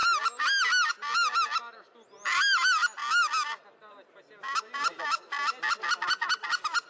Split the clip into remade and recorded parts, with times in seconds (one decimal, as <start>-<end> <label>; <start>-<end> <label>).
0.0-6.9 recorded